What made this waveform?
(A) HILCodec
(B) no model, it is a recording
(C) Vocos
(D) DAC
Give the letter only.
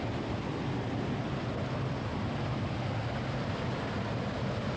B